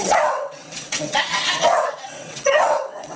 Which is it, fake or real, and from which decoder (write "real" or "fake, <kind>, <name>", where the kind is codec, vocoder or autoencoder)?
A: fake, vocoder, WaveNeXt